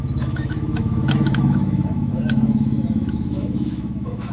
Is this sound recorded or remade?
remade